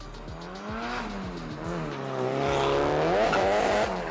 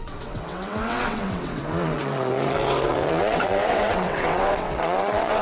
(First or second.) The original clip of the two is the first